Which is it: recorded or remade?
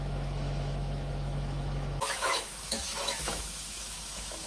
remade